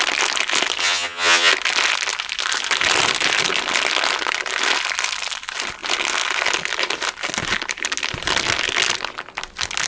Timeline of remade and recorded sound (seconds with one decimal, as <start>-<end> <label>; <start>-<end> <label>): 0.0-0.8 recorded; 0.8-1.5 remade; 1.5-9.9 recorded